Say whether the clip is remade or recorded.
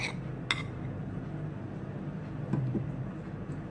recorded